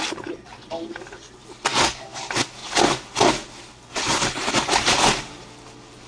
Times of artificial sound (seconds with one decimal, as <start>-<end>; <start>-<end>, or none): 1.7-2.2